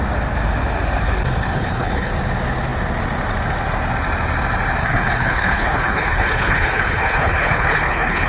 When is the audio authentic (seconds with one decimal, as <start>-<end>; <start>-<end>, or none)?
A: 0.0-1.4; 2.1-4.8